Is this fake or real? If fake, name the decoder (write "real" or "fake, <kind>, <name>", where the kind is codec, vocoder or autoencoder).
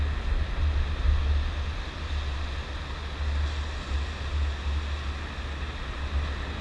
real